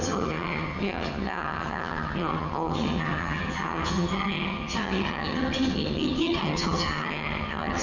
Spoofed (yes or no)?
yes